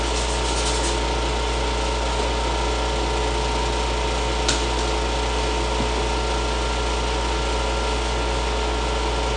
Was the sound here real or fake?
real